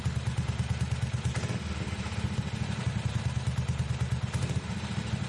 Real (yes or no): yes